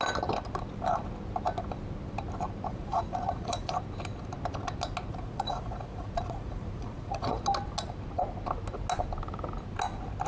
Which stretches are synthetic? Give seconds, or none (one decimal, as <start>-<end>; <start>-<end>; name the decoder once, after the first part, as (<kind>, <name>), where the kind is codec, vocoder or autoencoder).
2.7-3.7 (vocoder, Vocos); 5.1-7.4